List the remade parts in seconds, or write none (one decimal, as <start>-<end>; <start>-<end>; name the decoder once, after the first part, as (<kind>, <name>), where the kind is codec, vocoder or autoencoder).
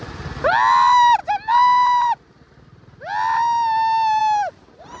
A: none